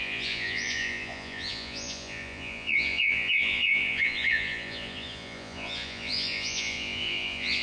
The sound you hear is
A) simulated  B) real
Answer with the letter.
A